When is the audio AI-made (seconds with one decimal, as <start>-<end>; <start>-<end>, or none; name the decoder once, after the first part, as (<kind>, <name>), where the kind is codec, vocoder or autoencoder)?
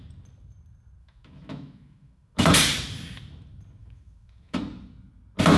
1.0-2.5 (autoencoder, DAC-VAE); 3.8-4.6